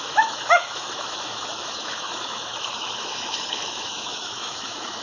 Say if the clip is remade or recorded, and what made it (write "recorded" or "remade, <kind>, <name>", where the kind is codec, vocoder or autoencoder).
remade, autoencoder, DAC-VAE